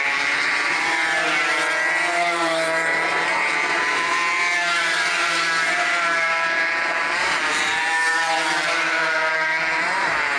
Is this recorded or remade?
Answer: remade